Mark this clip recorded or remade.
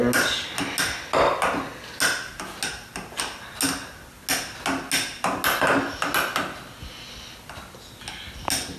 recorded